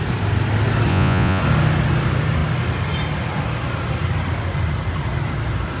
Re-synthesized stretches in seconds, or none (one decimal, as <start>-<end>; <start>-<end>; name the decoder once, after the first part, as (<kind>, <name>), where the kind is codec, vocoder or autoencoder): 0.9-1.4 (vocoder, Vocos)